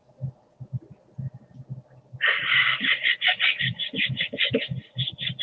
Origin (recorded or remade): recorded